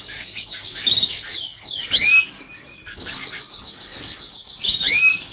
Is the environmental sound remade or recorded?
remade